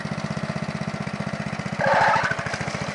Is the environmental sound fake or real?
real